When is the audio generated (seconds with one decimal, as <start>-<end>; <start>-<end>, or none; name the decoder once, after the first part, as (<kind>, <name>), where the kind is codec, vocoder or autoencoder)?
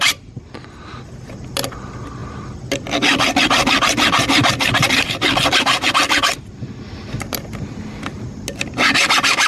none